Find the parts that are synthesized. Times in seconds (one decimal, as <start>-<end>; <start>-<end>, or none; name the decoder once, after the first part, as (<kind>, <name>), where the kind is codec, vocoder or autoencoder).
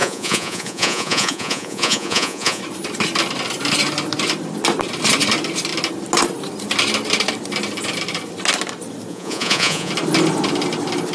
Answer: 0.0-2.6 (vocoder, Vocos); 9.1-9.9